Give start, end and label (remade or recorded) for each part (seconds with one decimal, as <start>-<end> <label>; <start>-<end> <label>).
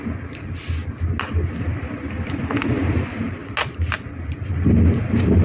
0.0-0.8 remade; 0.8-2.9 recorded; 2.9-3.4 remade; 3.4-4.3 recorded; 4.3-5.4 remade